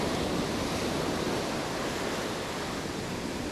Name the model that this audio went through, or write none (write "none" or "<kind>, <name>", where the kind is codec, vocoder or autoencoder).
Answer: none